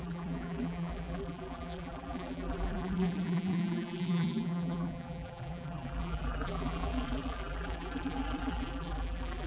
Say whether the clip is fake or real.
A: fake